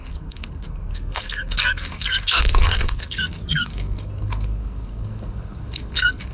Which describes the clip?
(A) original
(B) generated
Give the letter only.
B